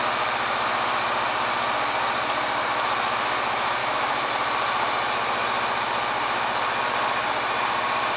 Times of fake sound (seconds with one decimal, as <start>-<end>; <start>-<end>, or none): 3.8-4.3